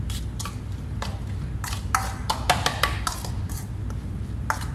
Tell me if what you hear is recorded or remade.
recorded